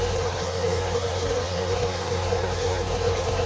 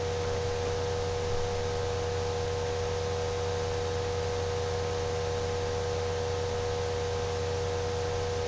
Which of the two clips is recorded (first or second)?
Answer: second